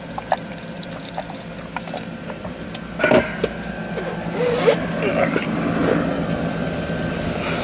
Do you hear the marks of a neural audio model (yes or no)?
no